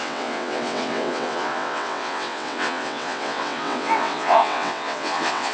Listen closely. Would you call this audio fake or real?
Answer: fake